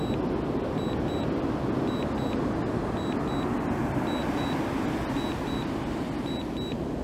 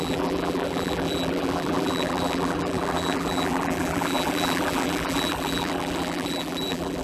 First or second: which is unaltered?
first